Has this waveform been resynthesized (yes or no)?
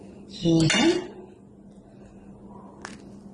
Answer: no